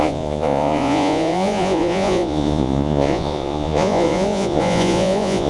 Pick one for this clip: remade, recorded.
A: remade